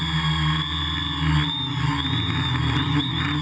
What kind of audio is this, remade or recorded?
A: recorded